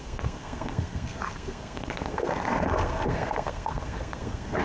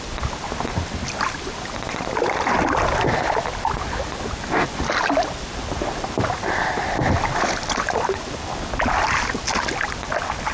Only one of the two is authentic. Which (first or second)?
second